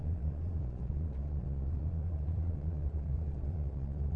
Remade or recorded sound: remade